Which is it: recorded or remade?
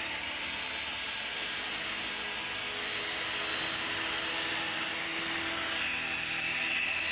recorded